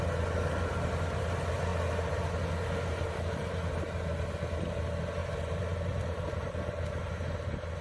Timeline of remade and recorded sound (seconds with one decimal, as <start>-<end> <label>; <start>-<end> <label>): 0.0-5.2 recorded; 5.2-6.5 remade; 6.5-7.8 recorded